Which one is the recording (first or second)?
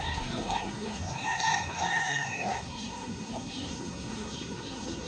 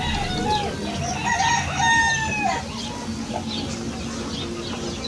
second